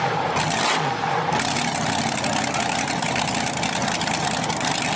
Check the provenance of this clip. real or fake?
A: real